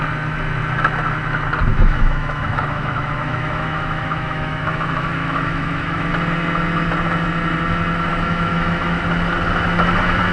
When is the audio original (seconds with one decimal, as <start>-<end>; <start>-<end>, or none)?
0.0-1.7; 6.1-8.1; 9.0-10.3